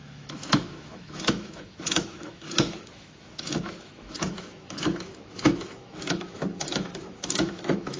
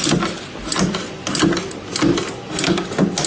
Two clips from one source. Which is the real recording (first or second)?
second